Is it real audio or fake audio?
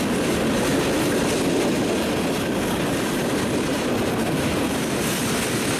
real